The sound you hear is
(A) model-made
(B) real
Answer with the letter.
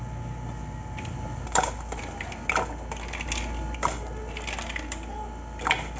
B